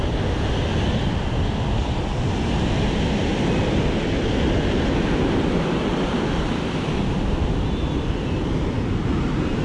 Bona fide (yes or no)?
yes